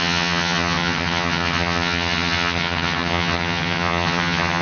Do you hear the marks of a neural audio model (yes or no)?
yes